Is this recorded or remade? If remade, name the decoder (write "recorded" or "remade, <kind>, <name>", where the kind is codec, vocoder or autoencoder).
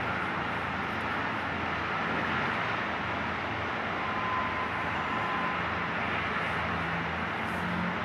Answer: recorded